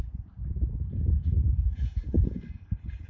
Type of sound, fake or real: fake